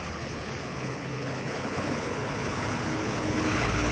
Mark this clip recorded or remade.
remade